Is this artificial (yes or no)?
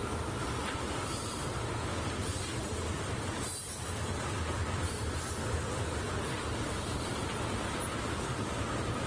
no